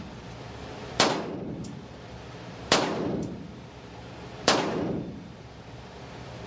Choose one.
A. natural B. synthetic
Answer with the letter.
B